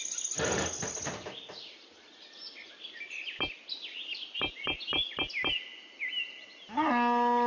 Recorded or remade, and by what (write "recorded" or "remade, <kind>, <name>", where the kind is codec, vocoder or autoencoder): recorded